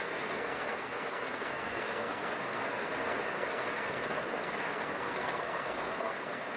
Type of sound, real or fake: fake